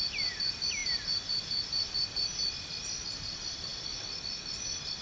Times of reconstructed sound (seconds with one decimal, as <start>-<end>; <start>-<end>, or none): none